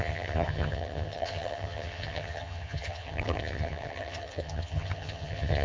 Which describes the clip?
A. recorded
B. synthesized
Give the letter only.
B